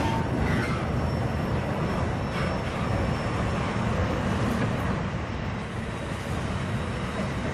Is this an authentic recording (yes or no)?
yes